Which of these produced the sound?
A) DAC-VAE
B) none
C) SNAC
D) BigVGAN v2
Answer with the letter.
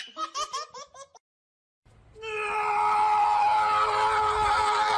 B